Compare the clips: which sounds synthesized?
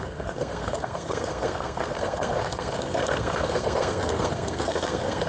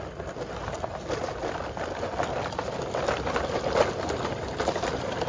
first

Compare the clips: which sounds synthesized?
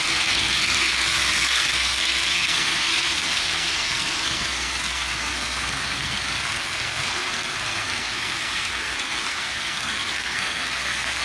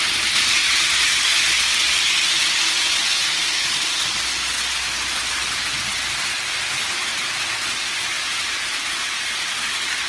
first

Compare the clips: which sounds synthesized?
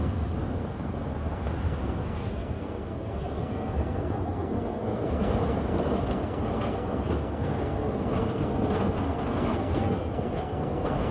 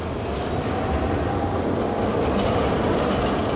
first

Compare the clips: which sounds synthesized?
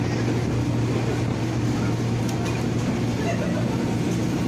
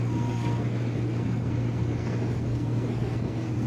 second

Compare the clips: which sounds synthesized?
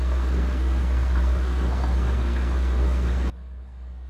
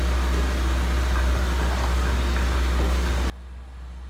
first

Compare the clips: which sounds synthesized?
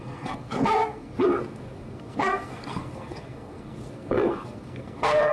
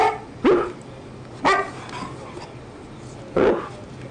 first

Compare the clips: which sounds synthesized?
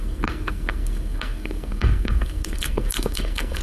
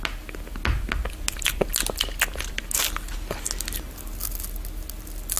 first